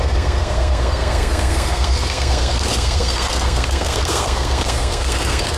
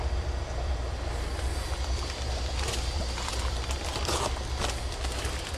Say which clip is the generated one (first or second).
first